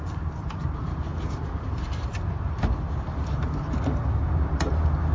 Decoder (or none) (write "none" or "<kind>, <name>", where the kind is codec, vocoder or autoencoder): vocoder, BigVGAN v2